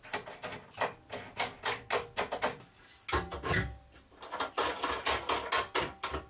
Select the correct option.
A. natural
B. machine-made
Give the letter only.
A